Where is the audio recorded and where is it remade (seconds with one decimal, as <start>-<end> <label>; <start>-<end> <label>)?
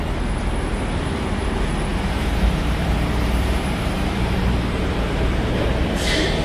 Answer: 0.0-1.9 recorded; 1.9-5.7 remade; 5.7-6.4 recorded